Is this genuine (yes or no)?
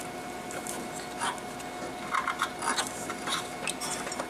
yes